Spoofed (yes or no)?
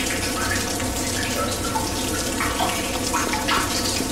no